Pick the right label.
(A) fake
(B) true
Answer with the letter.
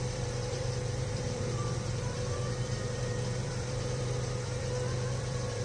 A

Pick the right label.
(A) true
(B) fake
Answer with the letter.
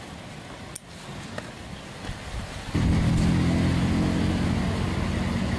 A